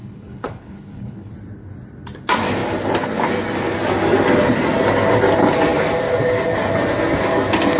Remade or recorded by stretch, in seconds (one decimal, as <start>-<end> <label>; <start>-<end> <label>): 0.0-1.3 remade; 1.3-7.8 recorded